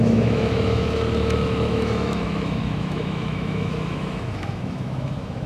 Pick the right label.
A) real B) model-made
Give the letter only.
B